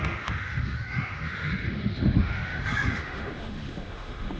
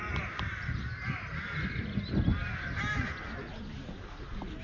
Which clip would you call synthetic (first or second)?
first